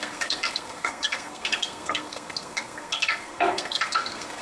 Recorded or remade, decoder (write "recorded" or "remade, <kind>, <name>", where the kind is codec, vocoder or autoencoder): remade, codec, SNAC